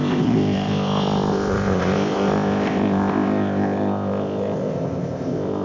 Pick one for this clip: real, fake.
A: fake